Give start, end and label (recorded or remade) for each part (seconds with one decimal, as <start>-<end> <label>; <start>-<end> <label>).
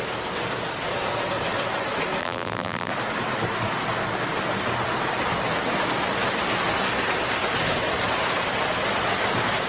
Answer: 0.0-2.2 recorded; 2.2-2.9 remade; 2.9-9.7 recorded